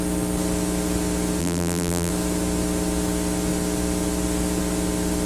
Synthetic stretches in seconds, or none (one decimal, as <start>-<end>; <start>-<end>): 1.4-2.1